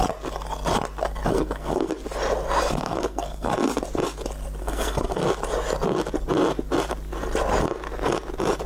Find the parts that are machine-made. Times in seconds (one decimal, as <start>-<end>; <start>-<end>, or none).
1.3-1.9; 2.6-3.5; 4.6-5.2